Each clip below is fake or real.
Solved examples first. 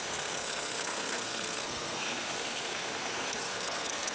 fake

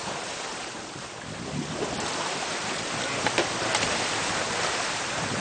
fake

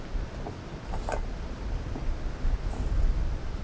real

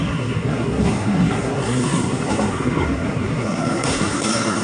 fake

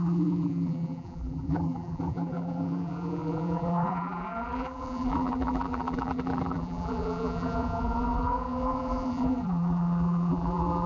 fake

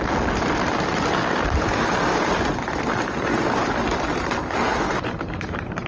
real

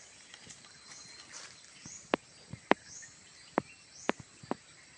fake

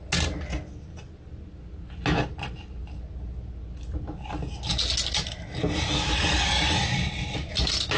real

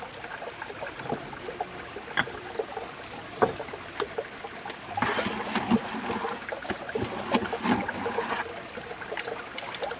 real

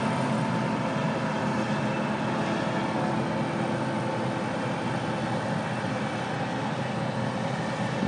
real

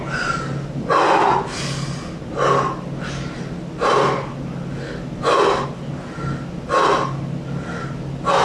real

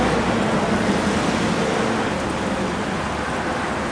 real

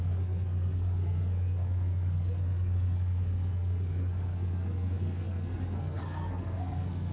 fake